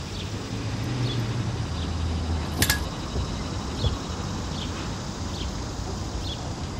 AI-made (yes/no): no